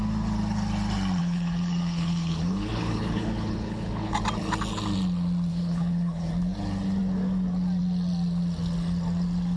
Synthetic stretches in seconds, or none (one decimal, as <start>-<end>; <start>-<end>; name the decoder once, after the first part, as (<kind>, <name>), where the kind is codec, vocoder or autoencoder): 1.2-4.1 (codec, HILCodec); 5.5-6.3